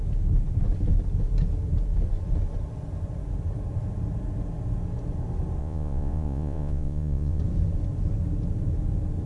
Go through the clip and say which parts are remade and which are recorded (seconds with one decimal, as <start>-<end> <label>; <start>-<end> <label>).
0.0-5.6 recorded; 5.6-7.4 remade; 7.4-9.3 recorded